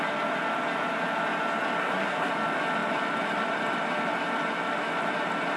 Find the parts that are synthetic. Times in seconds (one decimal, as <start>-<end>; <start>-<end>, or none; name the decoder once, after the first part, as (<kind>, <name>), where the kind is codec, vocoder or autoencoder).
1.8-2.3 (codec, SNAC)